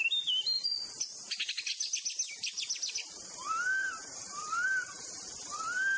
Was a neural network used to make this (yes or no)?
no